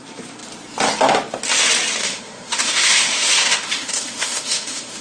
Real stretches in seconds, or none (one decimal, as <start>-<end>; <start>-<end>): 0.0-2.0